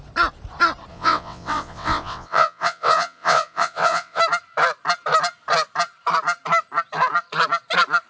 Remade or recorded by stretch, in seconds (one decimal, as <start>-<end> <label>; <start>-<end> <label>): 0.0-0.9 recorded; 0.9-4.2 remade; 4.2-8.1 recorded